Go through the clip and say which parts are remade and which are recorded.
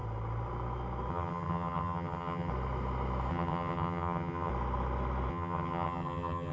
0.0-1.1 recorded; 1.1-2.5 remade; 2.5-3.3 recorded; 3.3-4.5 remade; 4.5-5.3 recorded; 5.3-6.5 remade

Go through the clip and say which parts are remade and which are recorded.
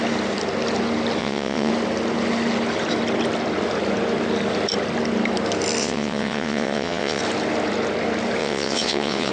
0.0-1.2 recorded; 1.2-1.7 remade; 1.7-5.8 recorded; 5.8-7.2 remade; 7.2-8.4 recorded; 8.4-9.3 remade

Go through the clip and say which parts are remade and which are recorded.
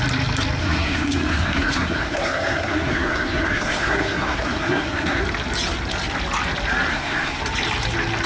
0.0-0.6 recorded; 0.6-5.2 remade; 5.2-6.9 recorded; 6.9-7.4 remade; 7.4-8.3 recorded